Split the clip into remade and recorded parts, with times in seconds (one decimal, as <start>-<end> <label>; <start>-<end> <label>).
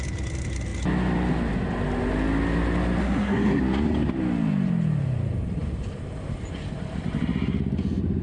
0.0-3.0 recorded; 3.0-3.6 remade; 3.6-8.2 recorded